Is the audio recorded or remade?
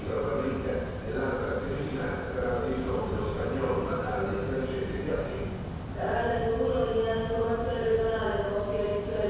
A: recorded